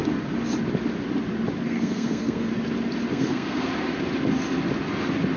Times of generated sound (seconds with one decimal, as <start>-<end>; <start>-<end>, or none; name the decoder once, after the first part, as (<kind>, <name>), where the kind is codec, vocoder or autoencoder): 1.6-2.5 (codec, SNAC); 3.1-3.7